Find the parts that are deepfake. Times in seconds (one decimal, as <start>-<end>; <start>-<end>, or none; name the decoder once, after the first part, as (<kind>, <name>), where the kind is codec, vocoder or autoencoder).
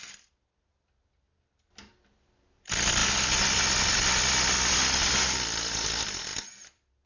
none